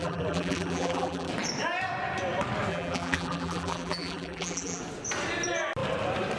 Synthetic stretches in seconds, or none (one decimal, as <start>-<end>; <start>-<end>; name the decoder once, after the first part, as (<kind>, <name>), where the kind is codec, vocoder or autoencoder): 0.0-1.3 (vocoder, BigVGAN v2); 2.7-4.8